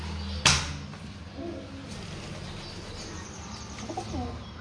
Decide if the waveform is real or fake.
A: real